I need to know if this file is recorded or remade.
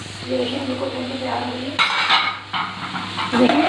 recorded